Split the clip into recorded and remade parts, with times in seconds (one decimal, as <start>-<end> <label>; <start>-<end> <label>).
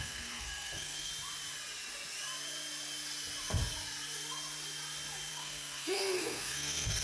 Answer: 0.0-1.1 remade; 1.1-5.3 recorded; 5.3-7.0 remade